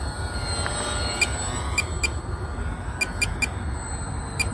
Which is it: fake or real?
real